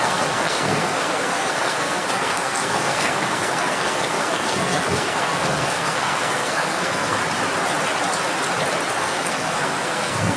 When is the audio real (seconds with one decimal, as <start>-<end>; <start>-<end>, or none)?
7.2-9.0